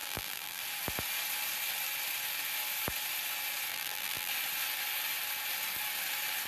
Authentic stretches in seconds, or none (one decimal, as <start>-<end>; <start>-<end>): 0.6-3.7; 4.3-6.5